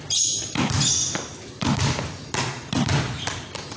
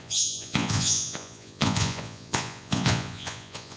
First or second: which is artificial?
second